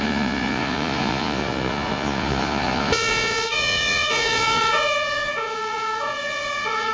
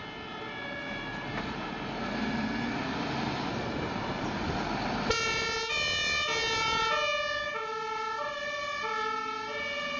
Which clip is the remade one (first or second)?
first